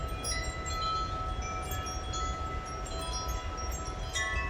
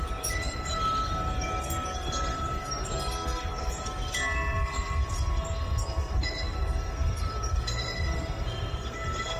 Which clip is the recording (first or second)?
first